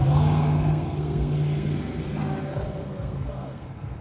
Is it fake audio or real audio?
fake